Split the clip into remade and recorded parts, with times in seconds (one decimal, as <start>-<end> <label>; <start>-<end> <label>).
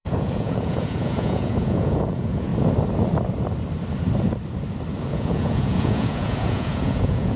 0.0-2.5 remade; 2.5-5.0 recorded; 5.0-7.4 remade